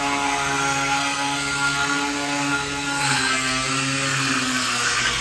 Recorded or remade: remade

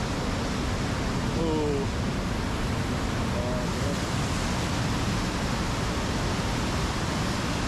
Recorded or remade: recorded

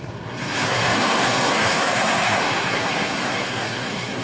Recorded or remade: remade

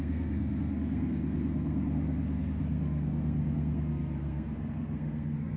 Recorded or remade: remade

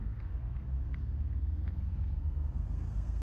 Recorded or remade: remade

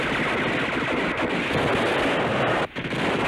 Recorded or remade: recorded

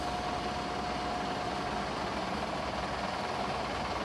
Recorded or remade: recorded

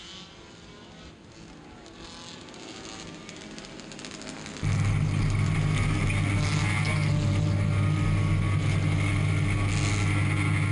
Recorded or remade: recorded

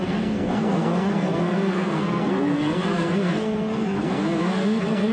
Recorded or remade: remade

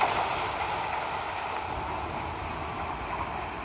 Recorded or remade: recorded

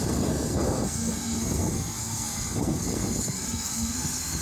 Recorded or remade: remade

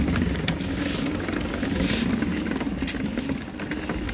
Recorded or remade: recorded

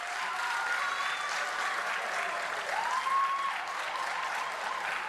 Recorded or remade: recorded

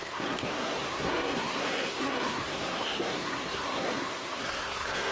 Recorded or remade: remade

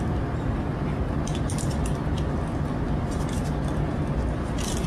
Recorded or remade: recorded